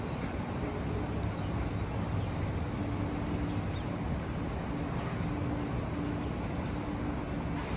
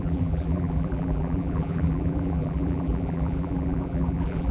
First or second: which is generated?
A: second